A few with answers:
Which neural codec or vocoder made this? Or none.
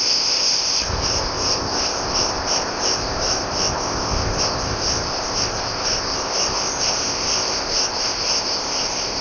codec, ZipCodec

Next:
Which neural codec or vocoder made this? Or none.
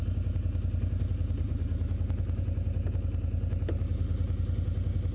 none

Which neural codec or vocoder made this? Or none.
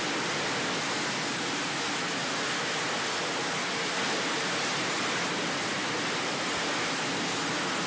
none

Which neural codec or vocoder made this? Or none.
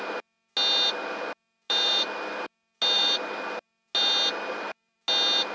none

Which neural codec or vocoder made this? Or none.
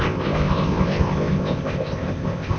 codec, ZipCodec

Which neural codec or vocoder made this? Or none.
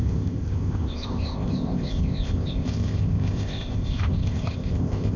codec, ZipCodec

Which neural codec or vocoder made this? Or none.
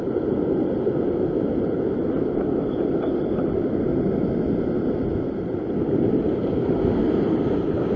none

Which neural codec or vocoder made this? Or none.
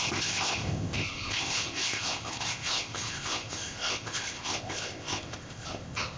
codec, ZipCodec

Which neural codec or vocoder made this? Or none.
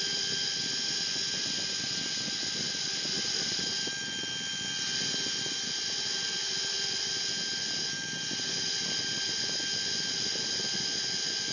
none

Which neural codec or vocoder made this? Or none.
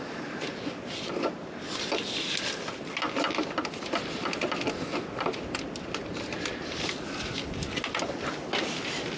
none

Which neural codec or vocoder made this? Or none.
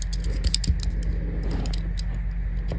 none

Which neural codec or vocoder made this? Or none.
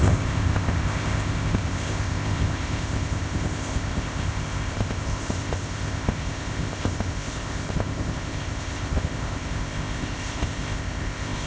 codec, ZipCodec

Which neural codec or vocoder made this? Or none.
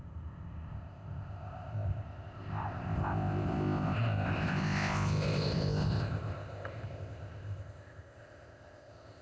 codec, ZipCodec